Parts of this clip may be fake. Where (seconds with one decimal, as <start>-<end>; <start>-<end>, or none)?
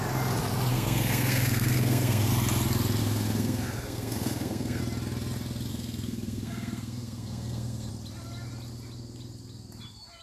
0.7-2.3; 3.0-4.8; 5.7-7.9